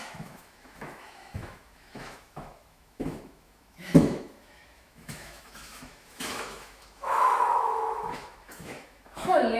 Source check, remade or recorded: remade